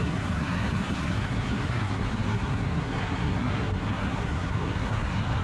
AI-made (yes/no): yes